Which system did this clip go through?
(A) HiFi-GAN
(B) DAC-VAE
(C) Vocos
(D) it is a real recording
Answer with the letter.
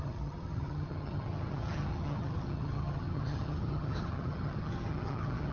A